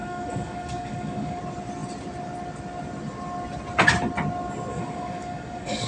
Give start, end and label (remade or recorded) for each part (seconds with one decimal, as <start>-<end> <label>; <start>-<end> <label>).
0.0-1.4 remade; 1.4-4.7 recorded; 4.7-5.9 remade